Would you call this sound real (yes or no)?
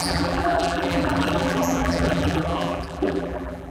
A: no